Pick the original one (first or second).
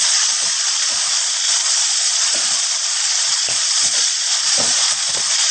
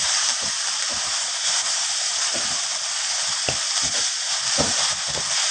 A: second